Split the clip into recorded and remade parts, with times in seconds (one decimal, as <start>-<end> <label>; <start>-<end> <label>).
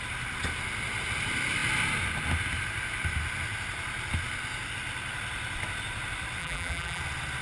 0.0-6.4 recorded; 6.4-7.0 remade; 7.0-7.4 recorded